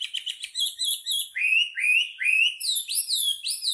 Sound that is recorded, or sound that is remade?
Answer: recorded